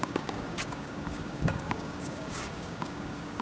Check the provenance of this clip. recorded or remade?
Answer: remade